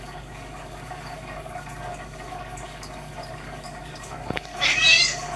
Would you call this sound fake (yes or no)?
yes